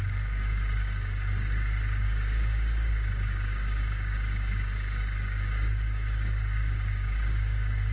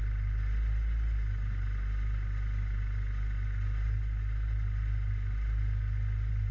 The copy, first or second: first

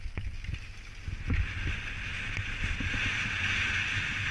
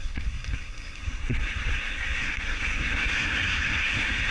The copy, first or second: second